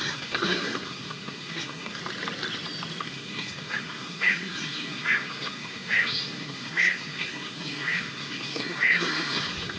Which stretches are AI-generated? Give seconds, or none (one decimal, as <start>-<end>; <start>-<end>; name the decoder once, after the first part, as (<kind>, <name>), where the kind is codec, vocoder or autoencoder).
0.0-2.0 (codec, SNAC); 3.0-9.8

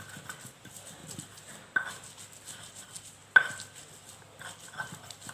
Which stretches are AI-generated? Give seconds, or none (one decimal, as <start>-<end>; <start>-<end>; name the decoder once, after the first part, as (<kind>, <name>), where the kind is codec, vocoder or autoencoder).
none

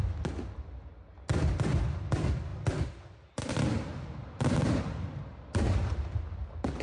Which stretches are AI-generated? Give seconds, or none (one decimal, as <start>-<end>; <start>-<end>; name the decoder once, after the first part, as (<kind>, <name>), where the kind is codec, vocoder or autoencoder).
none

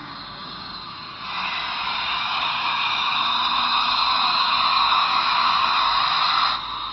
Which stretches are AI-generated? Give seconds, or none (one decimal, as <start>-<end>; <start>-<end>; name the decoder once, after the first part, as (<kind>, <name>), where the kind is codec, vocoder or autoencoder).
0.0-1.1 (codec, DAC); 1.9-6.0

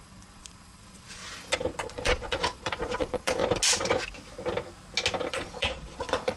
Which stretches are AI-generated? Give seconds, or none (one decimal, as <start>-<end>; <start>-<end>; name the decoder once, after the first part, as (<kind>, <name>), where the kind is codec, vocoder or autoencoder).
0.0-1.2 (vocoder, Vocos); 1.8-3.4; 5.3-6.4

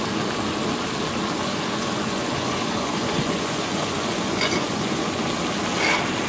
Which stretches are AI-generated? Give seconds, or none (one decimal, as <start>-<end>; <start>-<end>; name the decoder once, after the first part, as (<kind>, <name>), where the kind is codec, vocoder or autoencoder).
1.4-5.2 (vocoder, Vocos)